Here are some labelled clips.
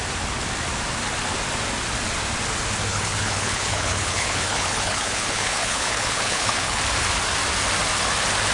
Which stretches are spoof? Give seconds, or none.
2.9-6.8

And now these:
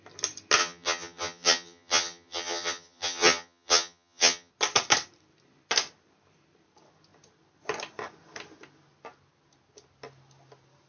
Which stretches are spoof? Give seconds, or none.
0.6-4.5

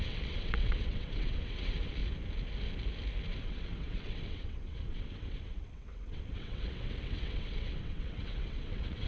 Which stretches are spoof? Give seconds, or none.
0.0-2.0; 3.4-9.1

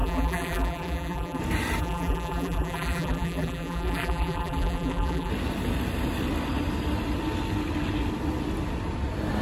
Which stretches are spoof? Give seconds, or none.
0.0-1.4; 1.8-5.3

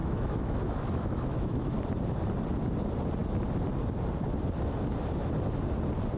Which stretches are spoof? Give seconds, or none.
0.0-1.7

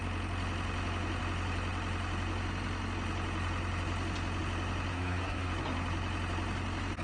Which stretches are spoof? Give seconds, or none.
4.9-5.5

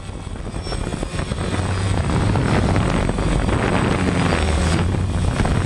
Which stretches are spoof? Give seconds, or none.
none

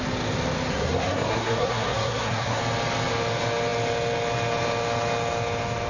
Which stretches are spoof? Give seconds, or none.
0.7-2.6